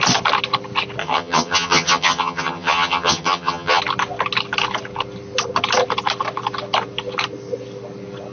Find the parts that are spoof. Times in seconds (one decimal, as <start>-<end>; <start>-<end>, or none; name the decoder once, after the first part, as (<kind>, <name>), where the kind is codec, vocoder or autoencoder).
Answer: 1.0-3.8 (vocoder, HiFi-GAN)